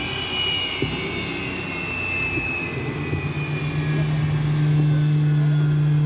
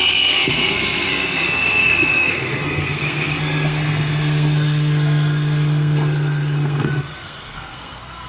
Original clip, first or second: first